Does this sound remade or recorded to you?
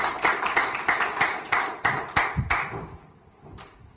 recorded